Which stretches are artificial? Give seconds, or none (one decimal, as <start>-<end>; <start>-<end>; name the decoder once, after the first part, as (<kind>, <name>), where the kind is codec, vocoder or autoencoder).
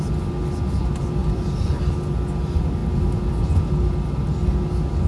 1.2-1.9 (vocoder, BigVGAN v2)